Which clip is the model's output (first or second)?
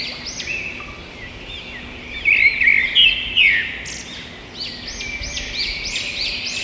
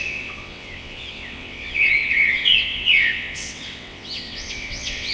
second